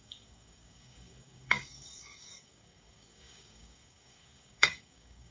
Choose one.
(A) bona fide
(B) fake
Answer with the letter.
B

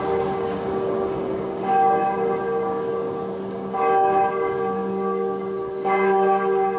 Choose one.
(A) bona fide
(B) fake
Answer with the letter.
B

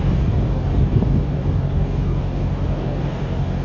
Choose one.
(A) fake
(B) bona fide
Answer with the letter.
A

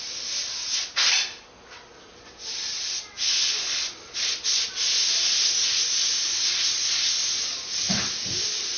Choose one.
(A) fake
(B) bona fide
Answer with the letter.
B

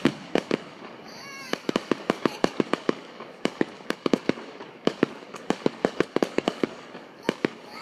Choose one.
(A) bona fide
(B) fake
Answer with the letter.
B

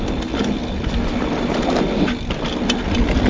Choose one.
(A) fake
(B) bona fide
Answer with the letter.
B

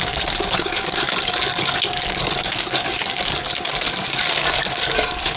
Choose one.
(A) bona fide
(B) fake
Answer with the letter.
B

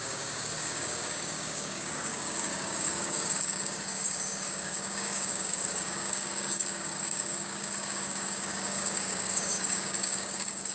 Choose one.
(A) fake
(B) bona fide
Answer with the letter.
A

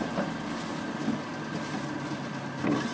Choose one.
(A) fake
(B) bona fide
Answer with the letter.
B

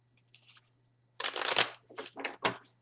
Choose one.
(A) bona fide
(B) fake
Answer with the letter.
A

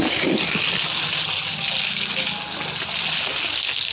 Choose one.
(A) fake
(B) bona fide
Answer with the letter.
B